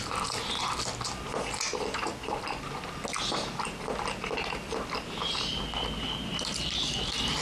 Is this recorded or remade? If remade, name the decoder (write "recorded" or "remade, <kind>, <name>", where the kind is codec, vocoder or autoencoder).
recorded